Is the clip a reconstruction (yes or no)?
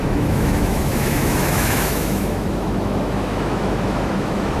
yes